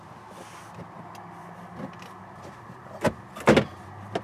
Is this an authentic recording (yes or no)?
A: yes